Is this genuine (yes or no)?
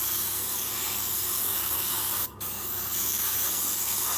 no